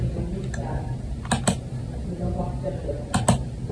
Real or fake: real